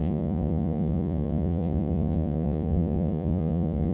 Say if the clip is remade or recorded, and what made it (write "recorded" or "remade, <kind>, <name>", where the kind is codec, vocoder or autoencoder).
remade, vocoder, Vocos